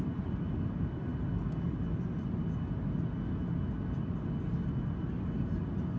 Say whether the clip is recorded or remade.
recorded